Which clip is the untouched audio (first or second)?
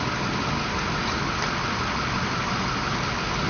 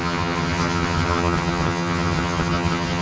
first